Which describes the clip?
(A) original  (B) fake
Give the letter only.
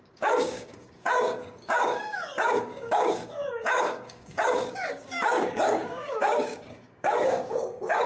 B